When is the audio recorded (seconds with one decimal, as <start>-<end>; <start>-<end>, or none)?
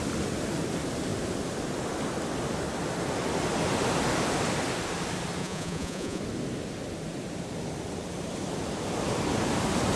0.0-5.4; 6.2-10.0